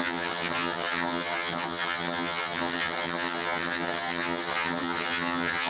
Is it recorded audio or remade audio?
remade